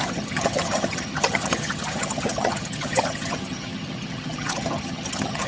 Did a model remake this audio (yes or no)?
yes